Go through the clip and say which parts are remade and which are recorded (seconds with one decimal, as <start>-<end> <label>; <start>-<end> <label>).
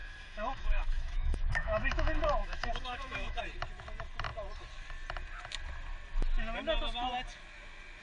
0.0-3.4 remade; 3.4-8.0 recorded